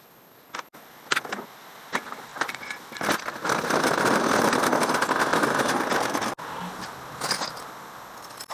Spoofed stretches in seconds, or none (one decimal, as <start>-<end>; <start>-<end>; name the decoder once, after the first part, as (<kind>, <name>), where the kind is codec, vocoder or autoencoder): none

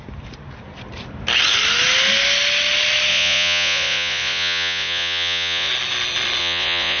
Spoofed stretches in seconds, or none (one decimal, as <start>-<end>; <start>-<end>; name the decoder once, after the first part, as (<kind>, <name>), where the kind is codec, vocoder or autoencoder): 3.1-5.7 (vocoder, Vocos); 6.4-7.0

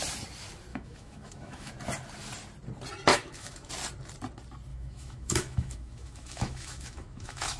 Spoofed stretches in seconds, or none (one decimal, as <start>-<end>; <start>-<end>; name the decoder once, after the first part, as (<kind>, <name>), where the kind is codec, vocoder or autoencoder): 0.7-1.7 (autoencoder, DAC-VAE); 3.1-3.7; 4.7-7.6

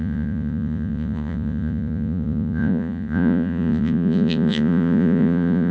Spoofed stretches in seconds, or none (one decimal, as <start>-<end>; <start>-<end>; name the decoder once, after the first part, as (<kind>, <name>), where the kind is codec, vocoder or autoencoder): 0.0-5.7 (vocoder, Vocos)

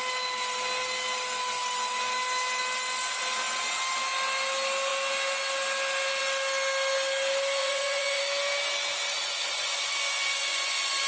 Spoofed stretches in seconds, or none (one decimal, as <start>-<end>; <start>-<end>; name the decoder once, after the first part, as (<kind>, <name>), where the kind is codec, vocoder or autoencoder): 7.6-8.2 (vocoder, Vocos); 9.2-11.1

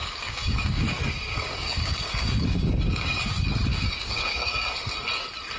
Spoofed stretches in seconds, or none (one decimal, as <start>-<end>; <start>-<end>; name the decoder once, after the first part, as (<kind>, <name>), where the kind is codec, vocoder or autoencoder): 0.0-3.2 (codec, DAC); 3.7-4.7

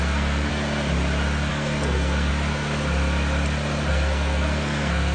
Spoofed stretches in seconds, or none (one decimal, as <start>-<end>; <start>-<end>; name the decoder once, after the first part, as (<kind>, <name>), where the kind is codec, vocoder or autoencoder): 0.0-0.5 (codec, SNAC); 1.5-2.3; 3.9-5.1

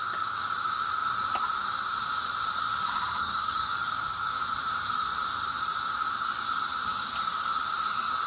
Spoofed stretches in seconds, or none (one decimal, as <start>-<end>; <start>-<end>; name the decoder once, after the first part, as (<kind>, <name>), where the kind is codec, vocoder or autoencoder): 3.2-4.4 (codec, DAC)